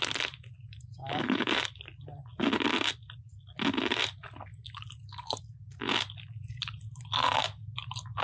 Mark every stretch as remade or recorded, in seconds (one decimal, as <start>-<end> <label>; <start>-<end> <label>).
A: 0.0-1.0 recorded; 1.0-1.5 remade; 1.5-8.2 recorded